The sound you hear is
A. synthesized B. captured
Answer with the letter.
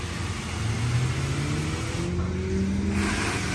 B